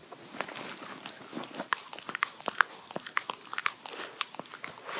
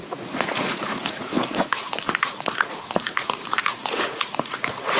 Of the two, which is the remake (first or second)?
second